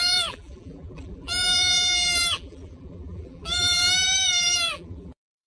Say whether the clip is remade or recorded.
remade